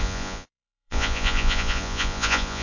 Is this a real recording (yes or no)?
no